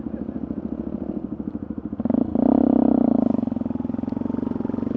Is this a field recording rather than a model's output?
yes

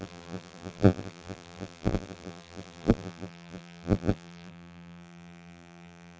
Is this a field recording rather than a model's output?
no